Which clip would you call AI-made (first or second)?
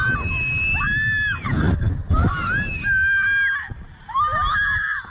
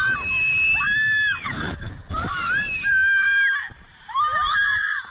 second